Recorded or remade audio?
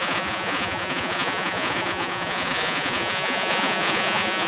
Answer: remade